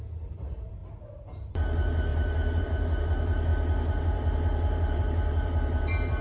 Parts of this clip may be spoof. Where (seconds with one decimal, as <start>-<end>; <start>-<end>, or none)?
0.0-0.8; 1.5-6.2